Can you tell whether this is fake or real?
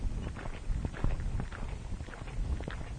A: real